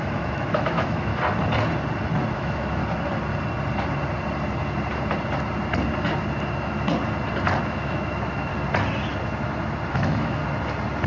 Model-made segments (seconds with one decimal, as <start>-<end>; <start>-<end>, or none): 0.0-1.1; 2.3-2.8; 7.6-8.5; 9.9-10.4